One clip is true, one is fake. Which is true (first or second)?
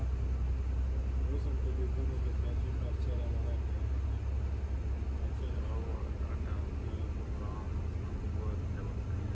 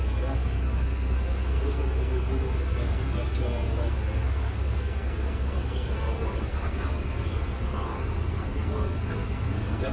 first